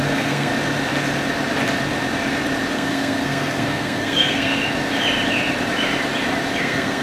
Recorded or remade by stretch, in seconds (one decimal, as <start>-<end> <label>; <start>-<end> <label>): 0.0-0.5 remade; 0.5-2.7 recorded; 2.7-4.6 remade; 4.6-6.6 recorded; 6.6-7.0 remade